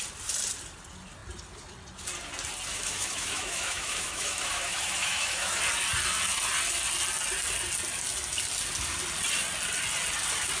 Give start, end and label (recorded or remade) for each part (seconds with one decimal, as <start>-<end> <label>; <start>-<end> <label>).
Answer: 0.0-2.7 recorded; 2.7-5.6 remade; 5.6-10.6 recorded